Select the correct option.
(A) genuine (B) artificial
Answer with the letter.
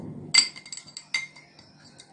A